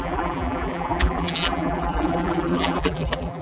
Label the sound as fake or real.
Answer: fake